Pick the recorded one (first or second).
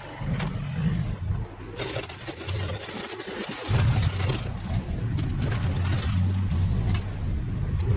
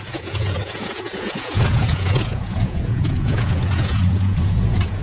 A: first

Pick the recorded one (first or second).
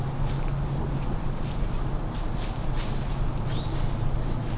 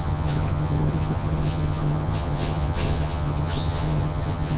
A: first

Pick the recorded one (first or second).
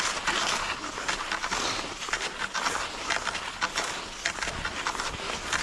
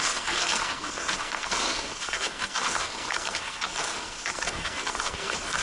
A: first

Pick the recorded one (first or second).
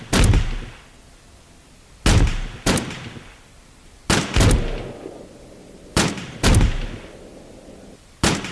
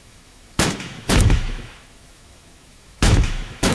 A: first